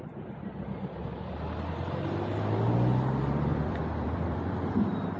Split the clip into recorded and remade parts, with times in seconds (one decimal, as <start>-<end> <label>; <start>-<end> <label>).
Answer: 0.0-3.5 recorded; 3.5-4.7 remade; 4.7-5.2 recorded